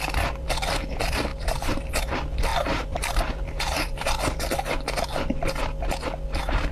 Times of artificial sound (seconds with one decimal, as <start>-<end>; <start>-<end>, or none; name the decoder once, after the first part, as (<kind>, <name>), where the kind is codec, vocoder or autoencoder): 1.3-2.0 (vocoder, BigVGAN v2); 2.5-4.2